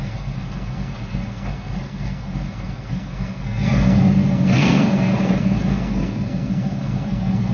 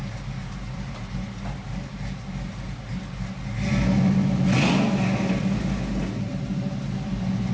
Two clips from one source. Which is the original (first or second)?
second